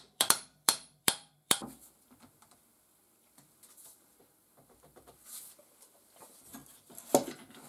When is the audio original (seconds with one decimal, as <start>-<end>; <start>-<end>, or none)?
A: 1.6-3.6; 6.6-7.7